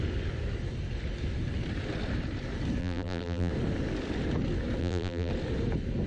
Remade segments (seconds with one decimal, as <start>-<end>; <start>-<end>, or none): 2.8-3.5; 4.8-5.3

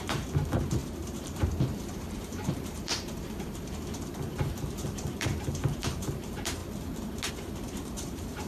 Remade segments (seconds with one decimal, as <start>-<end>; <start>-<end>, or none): 0.0-6.6; 7.3-8.5

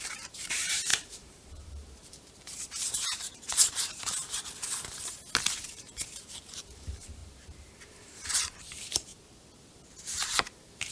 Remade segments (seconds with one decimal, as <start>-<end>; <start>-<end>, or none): 0.0-4.2; 5.7-9.1; 10.0-10.9

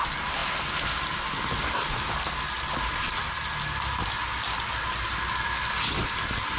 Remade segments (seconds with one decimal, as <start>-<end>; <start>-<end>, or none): 0.4-1.3

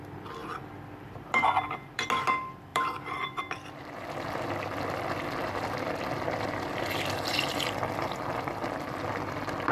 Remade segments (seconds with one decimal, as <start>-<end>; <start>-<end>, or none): 0.4-2.0; 2.7-3.4

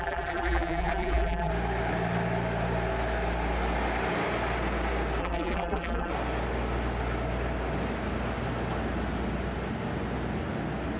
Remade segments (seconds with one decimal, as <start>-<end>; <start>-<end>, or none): 0.0-1.5; 5.2-6.1